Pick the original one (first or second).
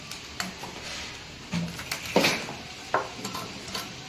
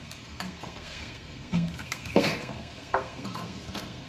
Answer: first